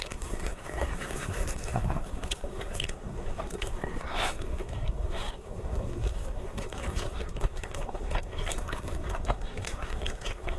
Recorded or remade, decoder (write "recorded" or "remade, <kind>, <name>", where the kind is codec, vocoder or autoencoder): remade, codec, SNAC